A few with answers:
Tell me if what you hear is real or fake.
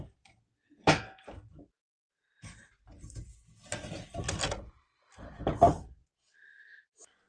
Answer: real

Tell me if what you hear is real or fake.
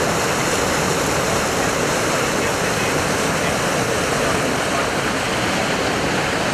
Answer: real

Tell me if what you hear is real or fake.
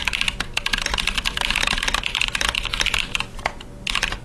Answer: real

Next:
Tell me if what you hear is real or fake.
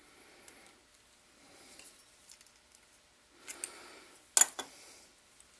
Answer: real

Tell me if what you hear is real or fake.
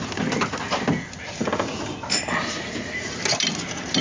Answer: real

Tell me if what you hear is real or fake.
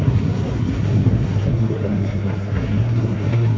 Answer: fake